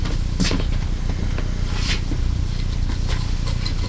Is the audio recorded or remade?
recorded